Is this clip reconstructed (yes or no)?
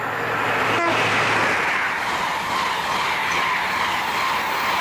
no